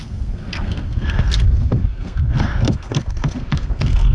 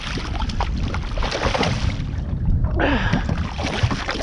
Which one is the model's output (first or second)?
first